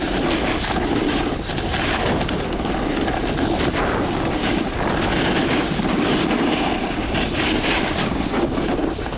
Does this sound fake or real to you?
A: real